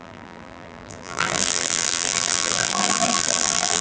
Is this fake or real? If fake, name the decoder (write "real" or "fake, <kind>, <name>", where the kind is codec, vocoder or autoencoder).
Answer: fake, vocoder, BigVGAN v2